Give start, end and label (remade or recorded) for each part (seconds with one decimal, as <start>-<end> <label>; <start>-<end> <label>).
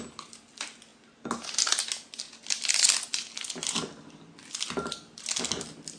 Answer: 0.0-6.0 recorded